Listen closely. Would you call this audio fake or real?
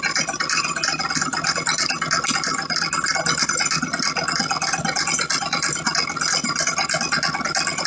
real